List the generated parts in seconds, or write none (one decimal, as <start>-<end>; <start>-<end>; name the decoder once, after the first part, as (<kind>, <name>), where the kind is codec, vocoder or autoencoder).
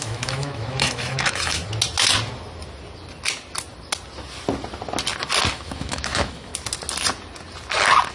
0.0-1.6 (autoencoder, DAC-VAE); 5.5-6.5